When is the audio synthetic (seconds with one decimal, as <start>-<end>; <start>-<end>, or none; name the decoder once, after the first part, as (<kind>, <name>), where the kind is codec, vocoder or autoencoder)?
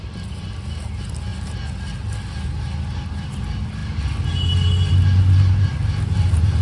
none